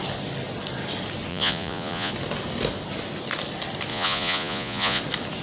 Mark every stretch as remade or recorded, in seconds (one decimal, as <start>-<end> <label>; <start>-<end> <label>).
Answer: 0.0-1.3 recorded; 1.3-2.1 remade; 2.1-3.9 recorded; 3.9-5.0 remade; 5.0-5.4 recorded